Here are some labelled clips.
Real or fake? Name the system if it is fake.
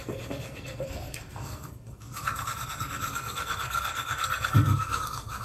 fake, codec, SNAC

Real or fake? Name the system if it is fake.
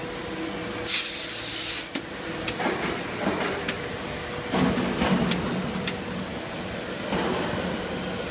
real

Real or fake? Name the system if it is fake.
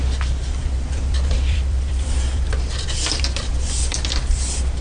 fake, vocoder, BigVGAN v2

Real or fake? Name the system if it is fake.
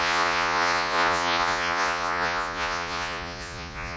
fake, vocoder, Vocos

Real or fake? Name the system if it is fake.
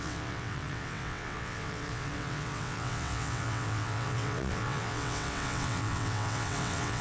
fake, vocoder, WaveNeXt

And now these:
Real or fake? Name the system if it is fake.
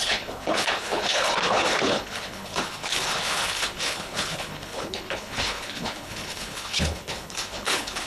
fake, codec, HILCodec